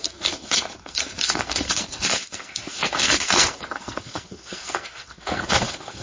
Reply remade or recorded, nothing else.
remade